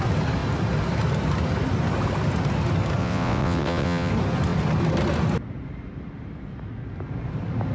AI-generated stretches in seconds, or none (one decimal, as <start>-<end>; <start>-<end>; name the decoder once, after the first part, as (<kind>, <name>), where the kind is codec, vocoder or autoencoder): 3.0-4.1 (vocoder, WaveNeXt)